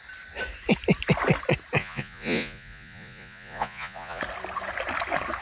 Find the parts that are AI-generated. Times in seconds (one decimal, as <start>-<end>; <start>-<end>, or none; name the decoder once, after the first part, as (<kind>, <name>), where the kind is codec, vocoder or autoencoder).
1.8-4.2 (vocoder, Vocos)